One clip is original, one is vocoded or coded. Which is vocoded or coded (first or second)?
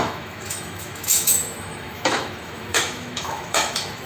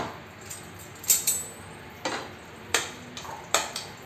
first